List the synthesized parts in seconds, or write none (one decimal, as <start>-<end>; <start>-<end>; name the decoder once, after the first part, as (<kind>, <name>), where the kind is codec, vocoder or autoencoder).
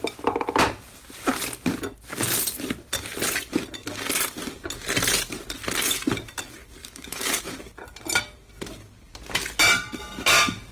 6.8-7.4 (autoencoder, DAC-VAE)